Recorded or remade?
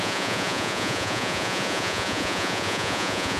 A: remade